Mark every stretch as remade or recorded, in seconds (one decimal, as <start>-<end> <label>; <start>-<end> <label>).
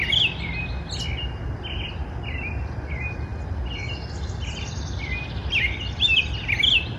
0.0-7.0 recorded